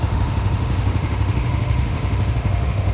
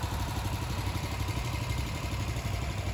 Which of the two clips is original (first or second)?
second